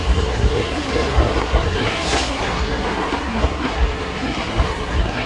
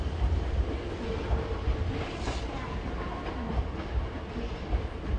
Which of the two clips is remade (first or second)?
first